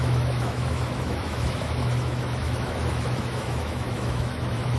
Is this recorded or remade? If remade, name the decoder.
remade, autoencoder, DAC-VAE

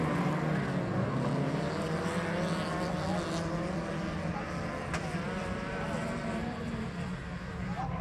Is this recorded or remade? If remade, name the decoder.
recorded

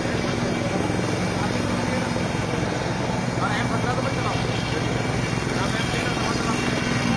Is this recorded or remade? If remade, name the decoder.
recorded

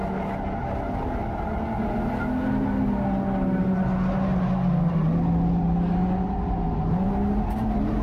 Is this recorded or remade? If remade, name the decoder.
recorded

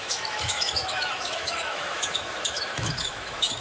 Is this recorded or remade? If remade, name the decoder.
remade, autoencoder, DAC-VAE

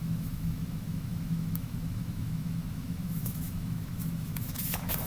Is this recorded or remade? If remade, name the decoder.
remade, autoencoder, DAC-VAE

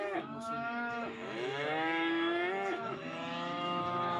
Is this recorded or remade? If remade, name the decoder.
remade, autoencoder, DAC-VAE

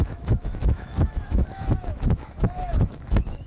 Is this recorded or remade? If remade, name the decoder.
remade, autoencoder, DAC-VAE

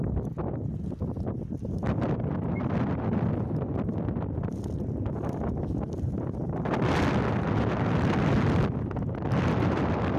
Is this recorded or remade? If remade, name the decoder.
recorded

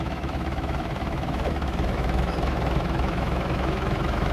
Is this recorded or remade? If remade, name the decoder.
remade, autoencoder, DAC-VAE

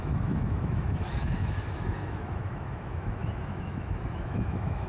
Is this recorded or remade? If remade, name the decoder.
remade, autoencoder, DAC-VAE